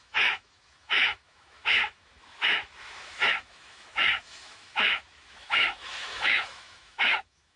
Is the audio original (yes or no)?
no